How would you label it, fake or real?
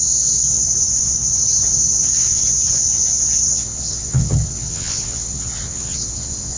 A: fake